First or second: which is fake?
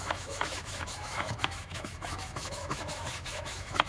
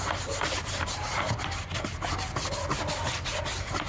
first